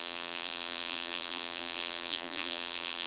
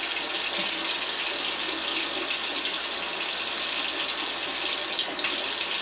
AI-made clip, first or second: first